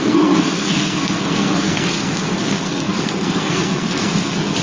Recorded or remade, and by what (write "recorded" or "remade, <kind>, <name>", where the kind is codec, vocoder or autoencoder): remade, codec, SNAC